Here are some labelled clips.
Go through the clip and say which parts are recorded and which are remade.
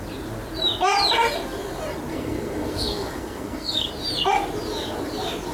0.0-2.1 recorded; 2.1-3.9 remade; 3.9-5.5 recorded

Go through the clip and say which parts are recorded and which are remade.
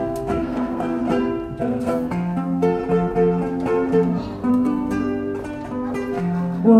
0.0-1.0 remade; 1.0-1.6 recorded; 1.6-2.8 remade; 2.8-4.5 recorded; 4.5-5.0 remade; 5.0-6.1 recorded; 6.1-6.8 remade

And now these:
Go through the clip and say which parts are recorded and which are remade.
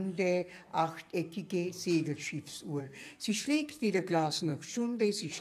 0.0-0.7 remade; 0.7-2.8 recorded; 2.8-5.4 remade